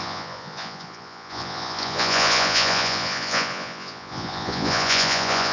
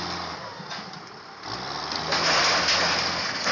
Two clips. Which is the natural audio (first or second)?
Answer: second